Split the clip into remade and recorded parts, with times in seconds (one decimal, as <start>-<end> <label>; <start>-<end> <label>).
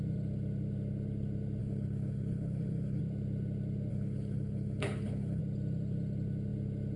0.0-1.6 recorded; 1.6-3.0 remade; 3.0-3.9 recorded; 3.9-5.4 remade; 5.4-7.0 recorded